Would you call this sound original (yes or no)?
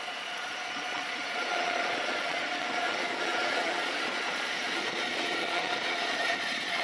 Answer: no